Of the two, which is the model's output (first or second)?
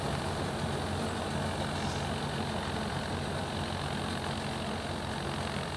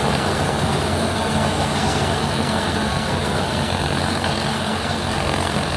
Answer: second